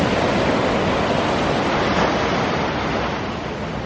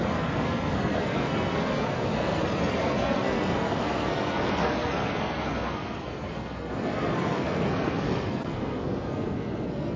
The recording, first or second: first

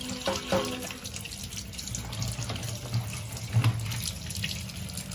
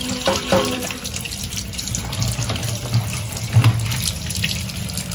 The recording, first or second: first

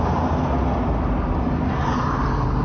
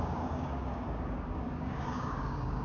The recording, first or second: first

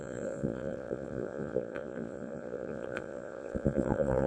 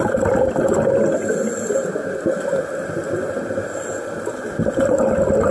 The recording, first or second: second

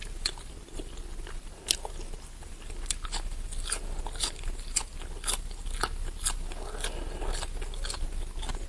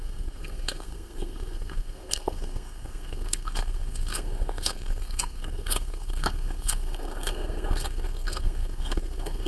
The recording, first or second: first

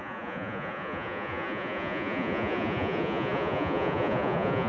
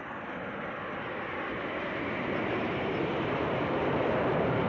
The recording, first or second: second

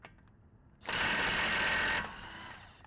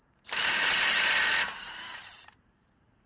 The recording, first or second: first